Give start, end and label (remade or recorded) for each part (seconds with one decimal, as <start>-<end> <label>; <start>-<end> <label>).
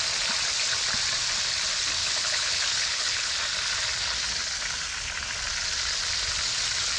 0.0-2.0 recorded; 2.0-3.3 remade; 3.3-7.0 recorded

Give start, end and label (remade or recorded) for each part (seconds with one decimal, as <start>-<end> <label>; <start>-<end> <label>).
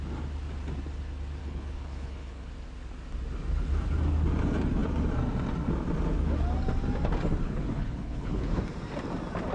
0.0-1.4 recorded; 1.4-2.5 remade; 2.5-7.4 recorded; 7.4-8.6 remade; 8.6-9.5 recorded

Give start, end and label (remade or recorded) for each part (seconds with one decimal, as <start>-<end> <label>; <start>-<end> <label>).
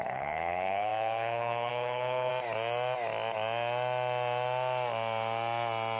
0.0-2.3 remade; 2.3-6.0 recorded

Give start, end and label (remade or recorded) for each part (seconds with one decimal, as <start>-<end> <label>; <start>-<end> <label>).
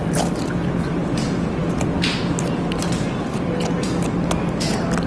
0.0-5.1 recorded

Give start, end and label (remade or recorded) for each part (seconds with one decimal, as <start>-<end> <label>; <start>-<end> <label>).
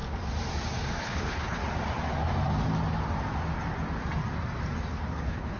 0.0-1.0 recorded; 1.0-1.6 remade; 1.6-4.9 recorded; 4.9-5.6 remade